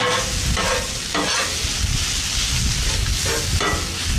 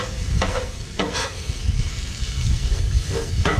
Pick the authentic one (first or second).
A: first